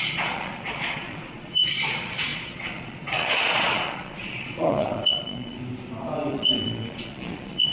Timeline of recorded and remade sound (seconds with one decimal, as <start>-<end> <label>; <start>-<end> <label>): 0.0-5.6 remade; 5.6-6.3 recorded; 6.3-7.7 remade